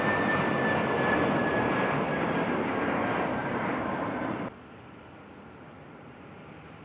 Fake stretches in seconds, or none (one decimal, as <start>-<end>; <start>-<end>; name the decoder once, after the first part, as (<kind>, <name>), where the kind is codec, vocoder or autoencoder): 2.1-3.0 (vocoder, BigVGAN v2); 3.4-6.8